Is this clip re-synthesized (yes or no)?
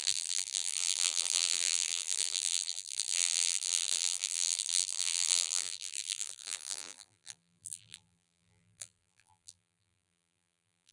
yes